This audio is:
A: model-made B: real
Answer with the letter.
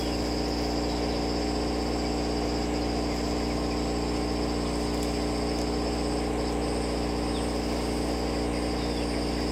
B